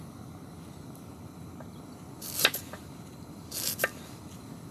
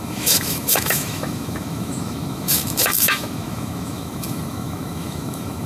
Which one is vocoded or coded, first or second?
second